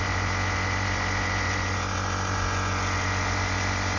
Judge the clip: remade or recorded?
remade